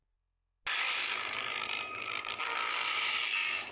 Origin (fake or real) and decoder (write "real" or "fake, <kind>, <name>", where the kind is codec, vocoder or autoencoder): real